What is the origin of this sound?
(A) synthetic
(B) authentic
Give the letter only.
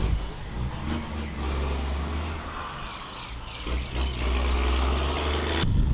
B